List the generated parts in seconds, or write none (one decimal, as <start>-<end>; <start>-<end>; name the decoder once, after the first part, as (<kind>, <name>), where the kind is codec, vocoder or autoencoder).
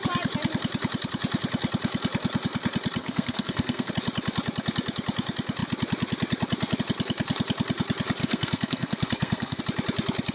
3.0-3.9 (codec, SNAC); 8.2-9.6